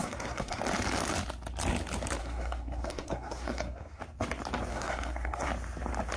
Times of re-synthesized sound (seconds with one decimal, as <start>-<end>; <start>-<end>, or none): 0.0-0.6; 2.2-4.0; 4.7-5.5